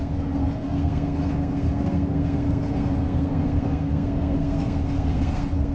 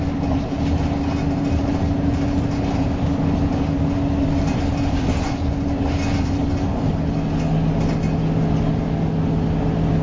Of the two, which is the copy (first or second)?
first